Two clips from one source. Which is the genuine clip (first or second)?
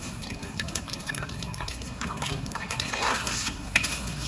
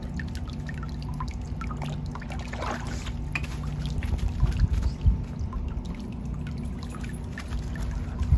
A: second